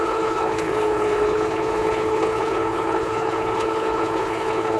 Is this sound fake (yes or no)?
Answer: yes